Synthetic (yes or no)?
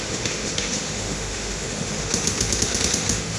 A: yes